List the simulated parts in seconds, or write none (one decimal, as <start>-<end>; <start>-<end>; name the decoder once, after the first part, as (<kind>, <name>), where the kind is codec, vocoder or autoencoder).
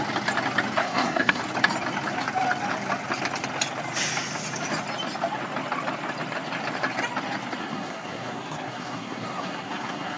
0.8-1.4 (codec, SNAC); 7.6-10.2